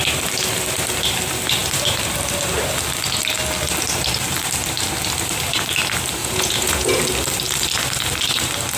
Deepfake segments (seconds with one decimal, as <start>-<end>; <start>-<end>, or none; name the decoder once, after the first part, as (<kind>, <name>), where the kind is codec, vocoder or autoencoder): 6.2-7.0 (vocoder, Vocos)